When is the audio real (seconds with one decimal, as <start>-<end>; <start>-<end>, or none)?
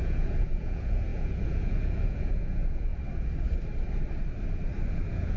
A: 2.9-4.9